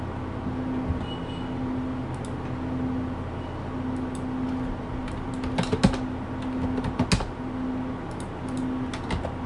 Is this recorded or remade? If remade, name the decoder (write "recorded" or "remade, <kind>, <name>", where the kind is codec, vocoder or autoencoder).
recorded